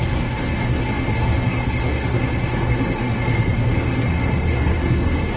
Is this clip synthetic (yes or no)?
yes